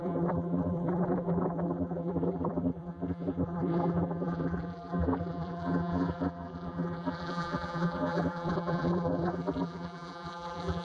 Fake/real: fake